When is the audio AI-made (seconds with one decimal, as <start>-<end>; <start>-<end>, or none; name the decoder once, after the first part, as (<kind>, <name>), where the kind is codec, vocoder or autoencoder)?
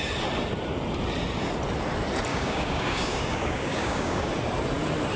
2.3-4.3 (codec, DAC)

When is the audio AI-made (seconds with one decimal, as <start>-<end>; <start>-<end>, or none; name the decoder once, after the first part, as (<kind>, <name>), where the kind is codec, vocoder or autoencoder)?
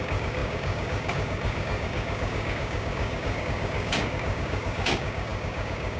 0.0-6.0 (codec, DAC)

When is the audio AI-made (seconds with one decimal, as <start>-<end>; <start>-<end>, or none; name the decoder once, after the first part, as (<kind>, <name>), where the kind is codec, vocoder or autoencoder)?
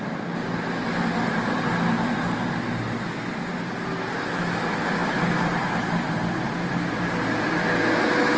none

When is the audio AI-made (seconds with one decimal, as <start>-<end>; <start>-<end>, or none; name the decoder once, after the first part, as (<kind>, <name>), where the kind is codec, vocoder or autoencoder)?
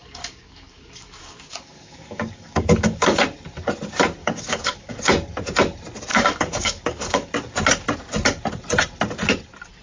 0.0-3.2 (codec, DAC); 4.2-5.0; 6.1-7.3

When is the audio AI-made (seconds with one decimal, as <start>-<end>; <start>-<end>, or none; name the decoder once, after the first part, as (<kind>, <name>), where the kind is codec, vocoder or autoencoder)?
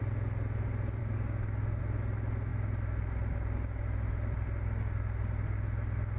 1.0-1.8 (codec, DAC)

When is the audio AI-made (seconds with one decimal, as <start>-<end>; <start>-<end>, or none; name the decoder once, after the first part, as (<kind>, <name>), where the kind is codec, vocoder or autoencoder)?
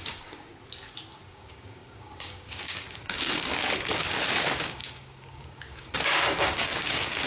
0.0-0.5 (codec, DAC); 1.3-7.3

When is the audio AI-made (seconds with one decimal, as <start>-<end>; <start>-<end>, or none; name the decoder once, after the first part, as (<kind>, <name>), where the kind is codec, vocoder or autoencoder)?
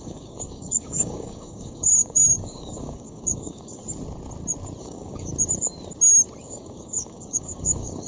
0.0-3.8 (codec, DAC); 4.8-5.3; 6.4-8.1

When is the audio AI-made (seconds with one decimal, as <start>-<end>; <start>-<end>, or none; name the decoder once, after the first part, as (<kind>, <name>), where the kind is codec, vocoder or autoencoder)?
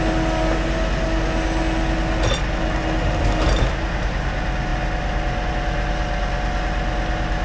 none